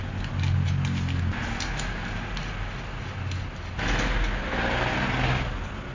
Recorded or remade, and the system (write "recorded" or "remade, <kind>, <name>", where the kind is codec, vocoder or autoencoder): recorded